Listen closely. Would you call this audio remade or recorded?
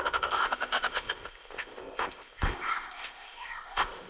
remade